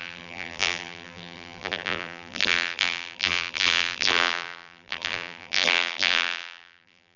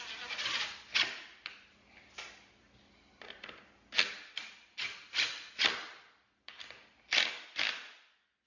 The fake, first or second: first